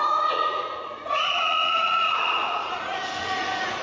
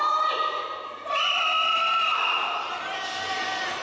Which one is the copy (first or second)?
first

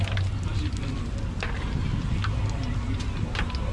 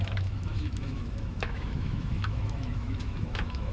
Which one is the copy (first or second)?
second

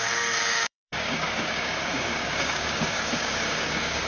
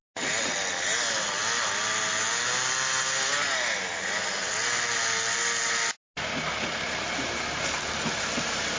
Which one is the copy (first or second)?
first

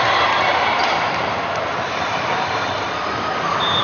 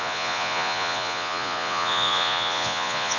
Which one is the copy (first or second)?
second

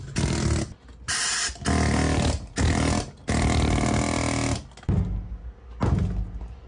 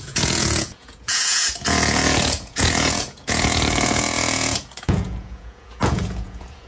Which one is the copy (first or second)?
second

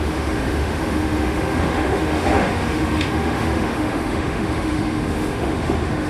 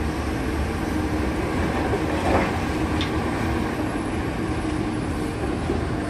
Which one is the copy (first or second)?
first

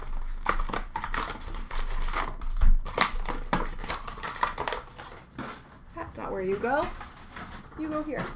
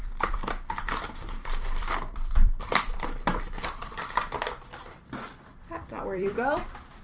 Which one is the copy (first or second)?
second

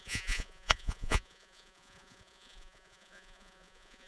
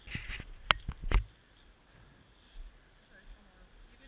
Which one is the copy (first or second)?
first